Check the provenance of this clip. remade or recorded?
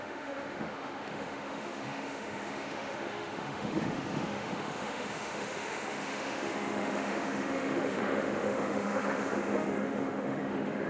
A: remade